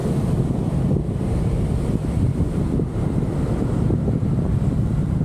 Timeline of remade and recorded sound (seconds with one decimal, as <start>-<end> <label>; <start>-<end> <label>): 0.0-2.0 recorded; 2.0-5.2 remade